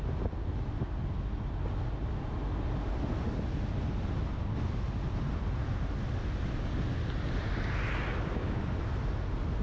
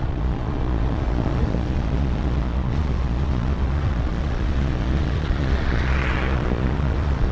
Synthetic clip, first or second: second